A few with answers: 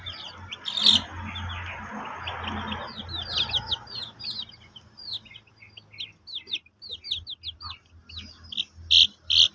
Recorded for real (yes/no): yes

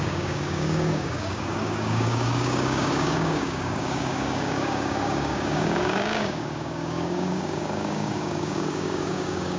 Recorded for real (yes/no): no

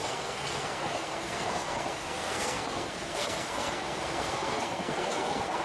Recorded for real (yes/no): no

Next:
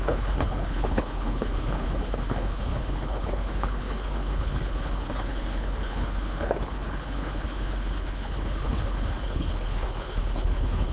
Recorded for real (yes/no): no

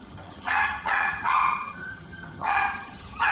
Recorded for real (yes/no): no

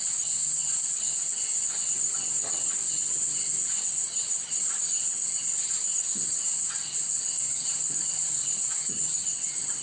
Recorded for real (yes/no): no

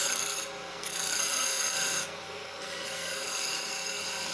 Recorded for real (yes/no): no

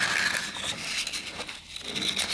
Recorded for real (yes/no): yes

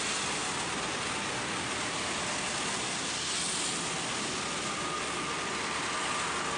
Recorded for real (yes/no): yes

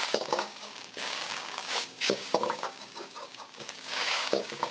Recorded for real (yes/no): no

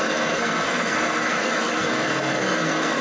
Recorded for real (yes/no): no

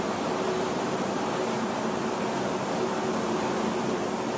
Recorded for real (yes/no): yes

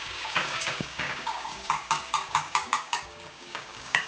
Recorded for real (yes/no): no